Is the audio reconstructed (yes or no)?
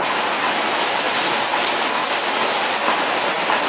no